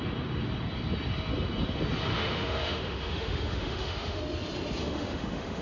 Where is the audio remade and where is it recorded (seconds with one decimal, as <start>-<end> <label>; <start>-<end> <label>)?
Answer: 0.0-2.1 recorded; 2.1-4.2 remade; 4.2-4.8 recorded; 4.8-5.6 remade